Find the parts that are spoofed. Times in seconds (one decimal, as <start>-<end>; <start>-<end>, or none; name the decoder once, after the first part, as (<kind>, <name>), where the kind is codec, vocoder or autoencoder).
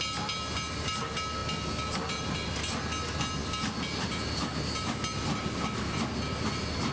none